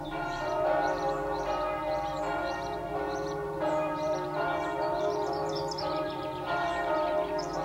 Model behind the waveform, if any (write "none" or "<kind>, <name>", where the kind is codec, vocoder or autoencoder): vocoder, BigVGAN v2